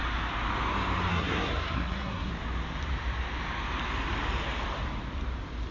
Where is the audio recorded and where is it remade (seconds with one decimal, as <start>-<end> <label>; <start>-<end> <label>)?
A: 0.0-1.1 recorded; 1.1-2.3 remade; 2.3-5.7 recorded